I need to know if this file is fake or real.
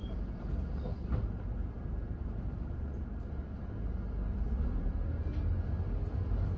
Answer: real